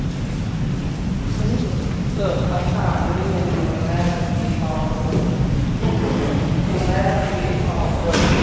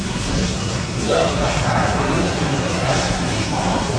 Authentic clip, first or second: first